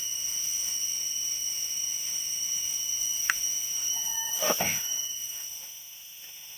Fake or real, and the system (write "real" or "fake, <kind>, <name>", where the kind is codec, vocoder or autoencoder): fake, autoencoder, DAC-VAE